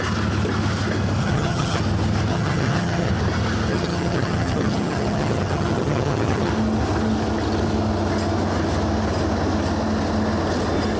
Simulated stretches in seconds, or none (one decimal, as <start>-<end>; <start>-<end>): 1.2-1.8; 2.3-3.1; 3.7-6.5